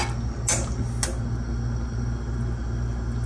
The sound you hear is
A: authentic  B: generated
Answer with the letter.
A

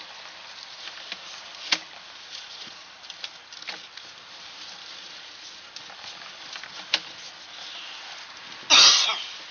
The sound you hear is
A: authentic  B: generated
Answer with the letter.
A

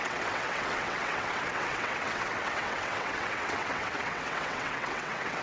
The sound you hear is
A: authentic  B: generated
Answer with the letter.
B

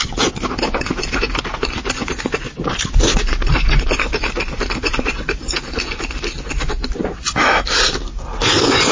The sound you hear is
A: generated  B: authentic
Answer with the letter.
B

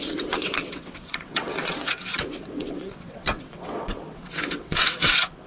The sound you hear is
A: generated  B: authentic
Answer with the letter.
A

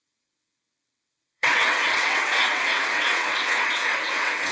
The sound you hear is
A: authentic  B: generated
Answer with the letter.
B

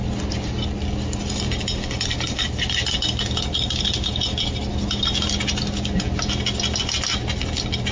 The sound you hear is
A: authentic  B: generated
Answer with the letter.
A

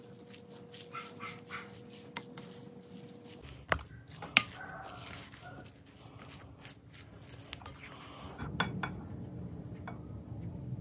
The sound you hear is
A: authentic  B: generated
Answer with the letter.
A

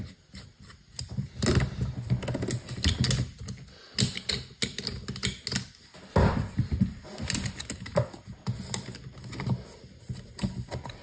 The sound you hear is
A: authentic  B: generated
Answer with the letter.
A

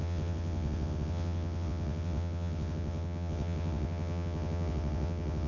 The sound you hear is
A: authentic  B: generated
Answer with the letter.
B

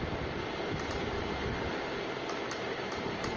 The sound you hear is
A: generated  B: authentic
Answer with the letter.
B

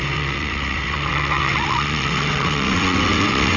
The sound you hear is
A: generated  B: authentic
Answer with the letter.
A